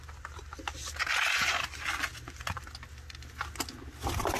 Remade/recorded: recorded